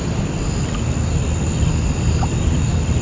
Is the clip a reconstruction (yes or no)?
no